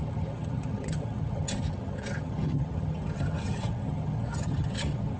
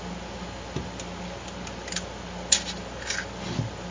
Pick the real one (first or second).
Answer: second